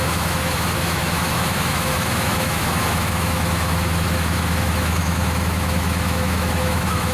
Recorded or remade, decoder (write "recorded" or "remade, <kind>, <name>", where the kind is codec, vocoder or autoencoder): remade, autoencoder, DAC-VAE